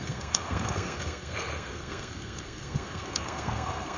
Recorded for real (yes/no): no